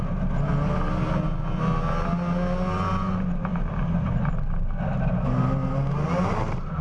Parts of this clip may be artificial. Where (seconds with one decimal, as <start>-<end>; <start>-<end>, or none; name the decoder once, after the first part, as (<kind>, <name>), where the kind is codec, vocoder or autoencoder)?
none